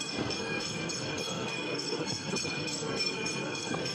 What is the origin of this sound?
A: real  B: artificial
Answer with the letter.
B